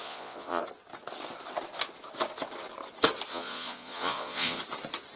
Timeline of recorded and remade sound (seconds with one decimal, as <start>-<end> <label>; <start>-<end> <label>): 0.0-0.6 remade; 0.6-3.3 recorded; 3.3-4.6 remade; 4.6-5.2 recorded